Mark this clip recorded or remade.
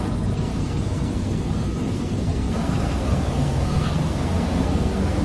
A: remade